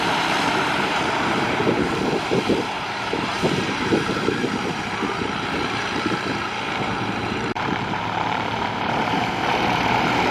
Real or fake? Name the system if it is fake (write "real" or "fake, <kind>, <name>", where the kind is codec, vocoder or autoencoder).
fake, vocoder, BigVGAN v2